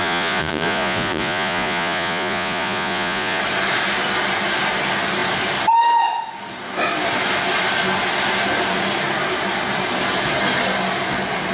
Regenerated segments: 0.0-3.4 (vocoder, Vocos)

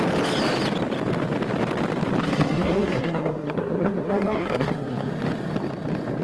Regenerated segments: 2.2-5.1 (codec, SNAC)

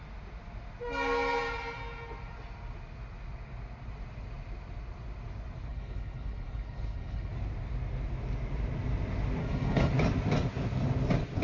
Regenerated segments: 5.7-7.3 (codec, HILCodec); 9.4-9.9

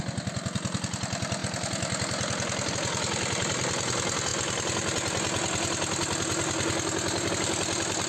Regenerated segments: none

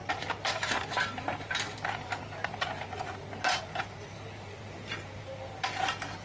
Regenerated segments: none